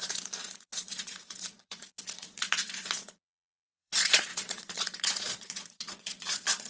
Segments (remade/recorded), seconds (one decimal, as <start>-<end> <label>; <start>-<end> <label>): 0.0-6.7 remade